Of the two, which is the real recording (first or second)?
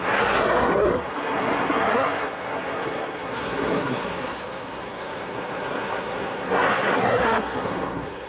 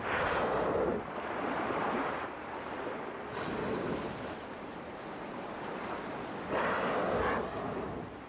second